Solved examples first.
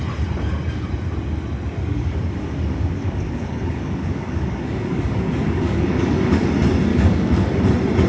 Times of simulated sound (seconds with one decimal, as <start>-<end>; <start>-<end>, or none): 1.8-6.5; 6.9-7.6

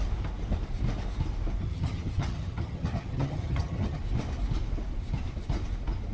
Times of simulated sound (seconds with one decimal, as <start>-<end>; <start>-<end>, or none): 1.6-4.0

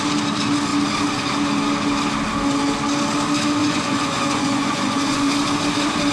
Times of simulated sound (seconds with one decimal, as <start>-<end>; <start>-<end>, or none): 3.6-5.3

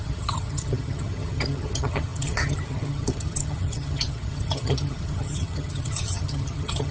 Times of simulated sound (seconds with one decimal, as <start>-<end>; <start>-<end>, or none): 0.0-6.9

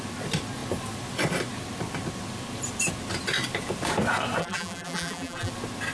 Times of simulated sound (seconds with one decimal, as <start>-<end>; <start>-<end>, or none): 4.4-5.5

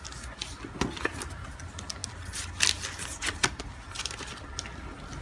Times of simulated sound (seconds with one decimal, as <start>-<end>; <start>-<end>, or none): none

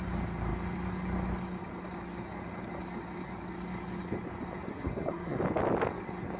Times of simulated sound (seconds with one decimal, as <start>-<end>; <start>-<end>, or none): 4.7-5.4

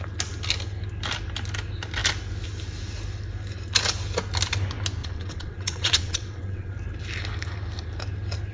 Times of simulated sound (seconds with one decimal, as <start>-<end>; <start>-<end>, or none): 5.0-6.7